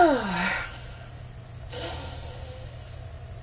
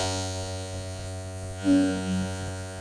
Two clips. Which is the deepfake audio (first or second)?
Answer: second